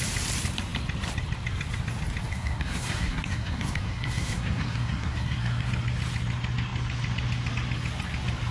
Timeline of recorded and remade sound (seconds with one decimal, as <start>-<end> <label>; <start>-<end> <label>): 0.0-2.3 recorded; 2.3-5.7 remade; 5.7-8.5 recorded